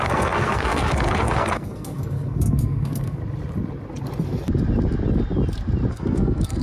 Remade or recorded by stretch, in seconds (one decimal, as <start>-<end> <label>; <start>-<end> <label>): 0.0-3.2 remade; 3.2-5.9 recorded; 5.9-6.6 remade